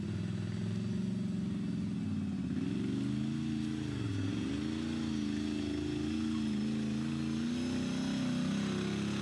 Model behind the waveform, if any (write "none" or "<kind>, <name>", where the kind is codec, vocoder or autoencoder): none